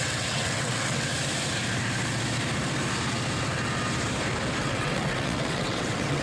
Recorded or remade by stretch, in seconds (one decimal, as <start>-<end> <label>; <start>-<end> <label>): 0.0-1.1 remade; 1.1-4.6 recorded; 4.6-6.2 remade